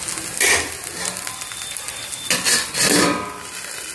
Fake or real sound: real